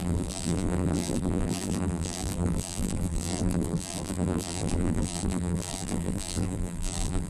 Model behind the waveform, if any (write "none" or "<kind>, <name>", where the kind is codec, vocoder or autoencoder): vocoder, BigVGAN v2